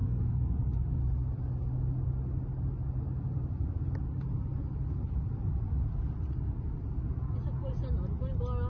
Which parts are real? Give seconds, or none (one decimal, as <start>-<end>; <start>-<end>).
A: 0.6-8.7